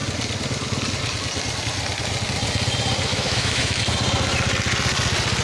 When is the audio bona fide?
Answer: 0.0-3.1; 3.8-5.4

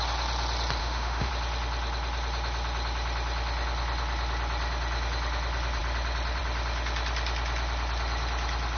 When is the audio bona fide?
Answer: 0.0-0.8; 1.3-8.8

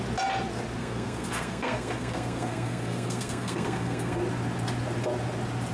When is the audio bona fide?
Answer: 0.0-0.8; 4.2-5.7

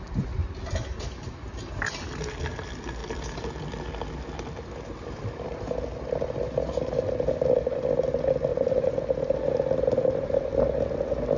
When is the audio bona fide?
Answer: 0.0-8.5; 9.0-11.4